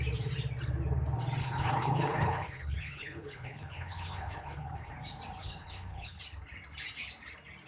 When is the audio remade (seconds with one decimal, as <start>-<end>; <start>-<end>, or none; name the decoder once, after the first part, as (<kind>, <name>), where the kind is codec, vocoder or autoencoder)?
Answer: 1.4-4.9 (codec, HILCodec); 5.4-6.2